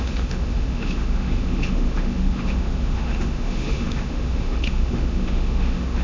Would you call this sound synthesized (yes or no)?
yes